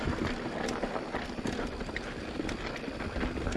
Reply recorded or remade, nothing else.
recorded